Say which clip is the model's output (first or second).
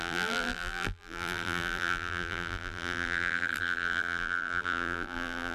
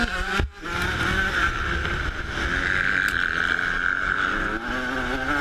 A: first